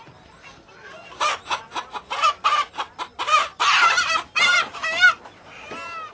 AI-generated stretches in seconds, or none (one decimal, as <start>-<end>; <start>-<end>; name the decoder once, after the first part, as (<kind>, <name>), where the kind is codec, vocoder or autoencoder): none